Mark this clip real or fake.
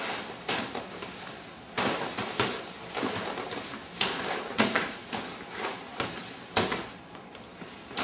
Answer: fake